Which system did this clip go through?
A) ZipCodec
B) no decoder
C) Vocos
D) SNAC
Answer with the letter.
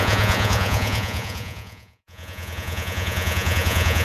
C